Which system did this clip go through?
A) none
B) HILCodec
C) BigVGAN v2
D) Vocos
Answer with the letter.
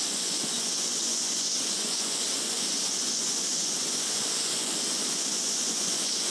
D